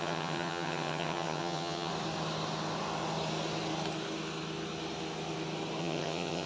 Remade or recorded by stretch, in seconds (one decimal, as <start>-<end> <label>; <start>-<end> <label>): 0.0-1.9 remade; 1.9-5.8 recorded; 5.8-6.5 remade